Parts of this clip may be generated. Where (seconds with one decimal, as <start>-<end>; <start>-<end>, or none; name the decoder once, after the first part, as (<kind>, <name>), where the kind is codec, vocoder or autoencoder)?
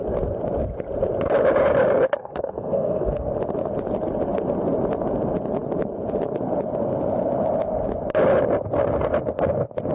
2.2-3.2 (codec, SNAC)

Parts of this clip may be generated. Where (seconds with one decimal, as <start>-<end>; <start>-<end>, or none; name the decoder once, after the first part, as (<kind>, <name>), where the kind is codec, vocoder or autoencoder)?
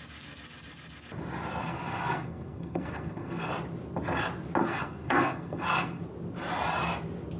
1.6-3.5 (codec, SNAC); 4.6-6.0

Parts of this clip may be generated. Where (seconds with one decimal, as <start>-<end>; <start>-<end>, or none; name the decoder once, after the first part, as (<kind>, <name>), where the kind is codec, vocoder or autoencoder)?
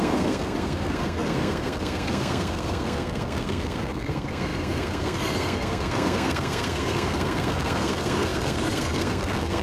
0.0-9.6 (codec, SNAC)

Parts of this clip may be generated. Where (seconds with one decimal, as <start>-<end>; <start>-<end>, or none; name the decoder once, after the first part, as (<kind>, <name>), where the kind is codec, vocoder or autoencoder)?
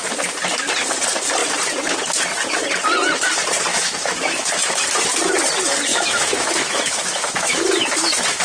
3.7-4.8 (autoencoder, DAC-VAE); 5.9-8.4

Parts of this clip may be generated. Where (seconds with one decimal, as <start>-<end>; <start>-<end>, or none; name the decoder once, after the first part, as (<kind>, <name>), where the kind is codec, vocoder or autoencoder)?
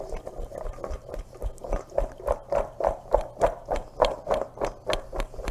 none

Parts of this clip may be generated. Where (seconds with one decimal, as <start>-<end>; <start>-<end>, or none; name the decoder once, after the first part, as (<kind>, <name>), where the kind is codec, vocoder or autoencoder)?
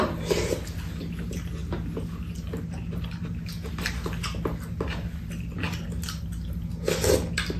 none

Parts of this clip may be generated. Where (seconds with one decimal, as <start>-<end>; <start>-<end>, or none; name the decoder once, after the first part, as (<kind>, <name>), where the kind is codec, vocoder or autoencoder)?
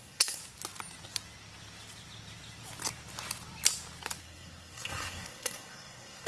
0.0-0.4 (codec, SNAC); 4.2-6.3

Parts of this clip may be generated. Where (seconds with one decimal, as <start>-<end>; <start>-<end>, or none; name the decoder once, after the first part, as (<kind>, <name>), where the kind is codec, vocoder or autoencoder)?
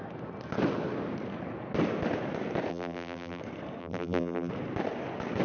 2.7-3.4 (vocoder, BigVGAN v2); 3.8-4.5